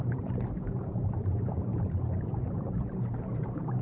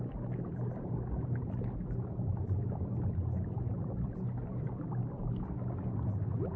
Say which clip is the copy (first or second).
first